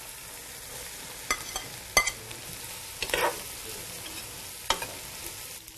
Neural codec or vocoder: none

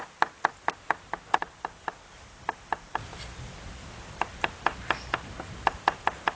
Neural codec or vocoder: none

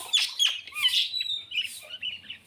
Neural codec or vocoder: none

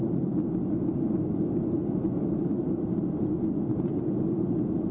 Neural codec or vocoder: none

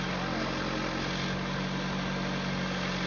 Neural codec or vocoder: none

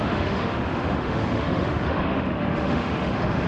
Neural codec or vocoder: autoencoder, DAC-VAE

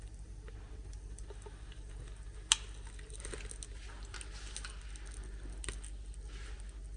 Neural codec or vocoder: none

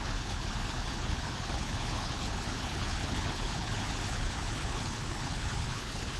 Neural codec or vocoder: codec, HILCodec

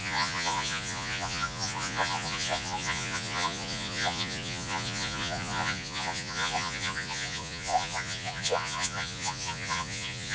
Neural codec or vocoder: vocoder, Vocos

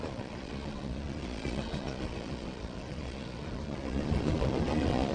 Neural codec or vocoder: vocoder, Vocos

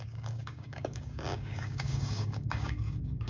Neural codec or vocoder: codec, DAC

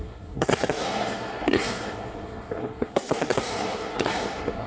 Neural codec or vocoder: codec, SNAC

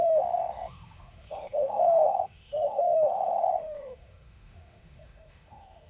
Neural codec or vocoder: autoencoder, DAC-VAE